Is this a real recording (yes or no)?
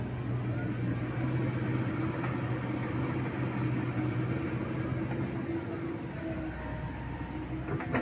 yes